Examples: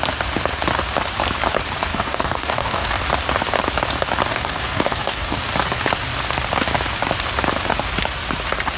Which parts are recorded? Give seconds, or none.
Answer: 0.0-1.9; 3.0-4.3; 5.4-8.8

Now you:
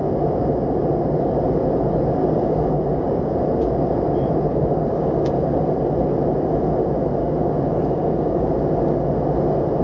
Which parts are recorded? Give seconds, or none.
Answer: 0.0-2.2; 3.2-4.5; 5.6-7.2; 8.5-9.8